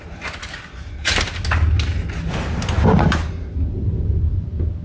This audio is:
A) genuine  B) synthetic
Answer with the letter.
A